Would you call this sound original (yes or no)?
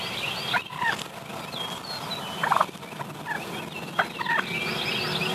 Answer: yes